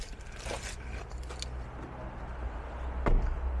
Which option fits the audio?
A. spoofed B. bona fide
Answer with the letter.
B